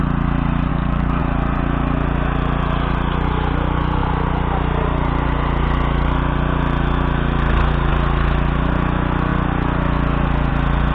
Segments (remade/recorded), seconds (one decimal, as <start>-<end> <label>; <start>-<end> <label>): 0.0-0.7 recorded; 0.7-1.2 remade; 1.2-10.9 recorded